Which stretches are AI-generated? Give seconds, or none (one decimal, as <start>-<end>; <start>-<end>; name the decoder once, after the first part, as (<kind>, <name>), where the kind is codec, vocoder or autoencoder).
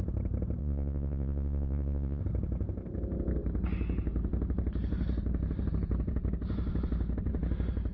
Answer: 0.6-2.2 (vocoder, Vocos)